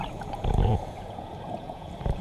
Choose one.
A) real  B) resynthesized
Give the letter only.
B